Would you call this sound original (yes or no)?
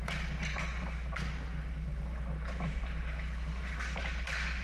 yes